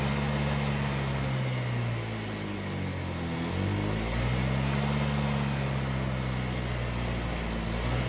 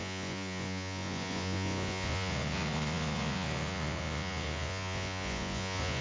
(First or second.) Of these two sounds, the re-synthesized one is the second